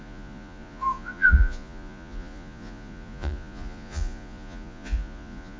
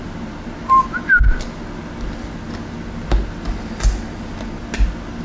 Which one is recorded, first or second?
second